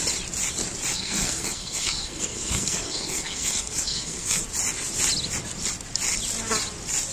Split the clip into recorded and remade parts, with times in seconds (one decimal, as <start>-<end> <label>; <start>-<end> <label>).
0.0-0.9 recorded; 0.9-4.4 remade; 4.4-7.1 recorded